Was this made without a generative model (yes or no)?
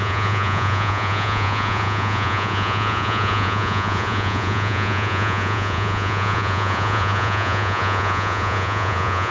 no